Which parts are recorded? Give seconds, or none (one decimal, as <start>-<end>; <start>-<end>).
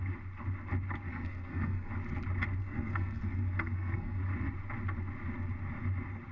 0.0-1.1; 1.9-2.6; 4.2-6.3